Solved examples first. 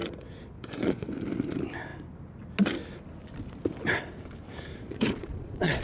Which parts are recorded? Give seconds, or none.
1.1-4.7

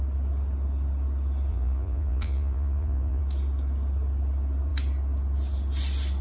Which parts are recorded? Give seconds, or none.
0.0-1.5; 3.2-6.2

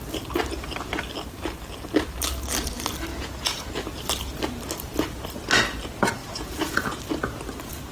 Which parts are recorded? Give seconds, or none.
0.0-3.1; 3.7-6.2; 7.0-7.9

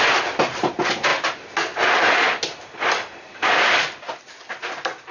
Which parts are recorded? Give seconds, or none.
0.0-5.1

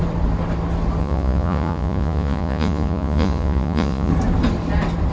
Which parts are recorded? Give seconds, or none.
0.0-1.0; 4.1-5.1

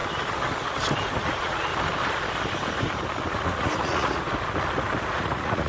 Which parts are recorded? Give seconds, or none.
0.0-1.2; 1.7-3.2; 4.3-5.1